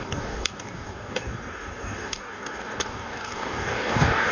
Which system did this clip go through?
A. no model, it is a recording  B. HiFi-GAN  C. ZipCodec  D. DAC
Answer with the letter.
D